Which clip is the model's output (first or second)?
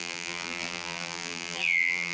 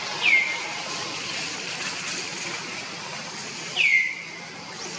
first